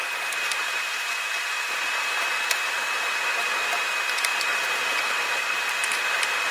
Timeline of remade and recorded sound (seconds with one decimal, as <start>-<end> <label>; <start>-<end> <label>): 0.0-6.5 remade